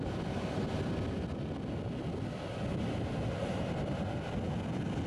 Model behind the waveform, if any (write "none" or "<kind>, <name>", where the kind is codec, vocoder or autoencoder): none